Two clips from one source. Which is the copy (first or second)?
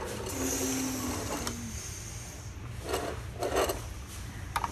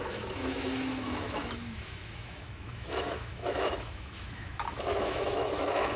second